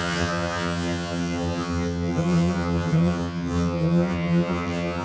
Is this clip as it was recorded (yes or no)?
no